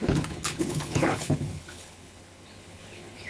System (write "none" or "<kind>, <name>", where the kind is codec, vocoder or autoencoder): codec, HILCodec